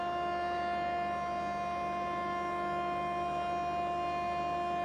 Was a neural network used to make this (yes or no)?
no